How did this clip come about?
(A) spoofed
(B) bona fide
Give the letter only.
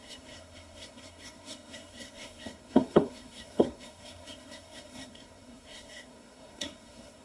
A